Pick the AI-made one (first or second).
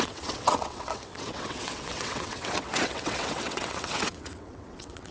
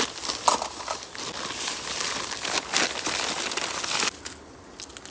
first